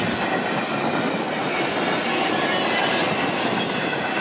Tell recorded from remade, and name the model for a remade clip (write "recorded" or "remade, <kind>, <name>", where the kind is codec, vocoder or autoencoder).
recorded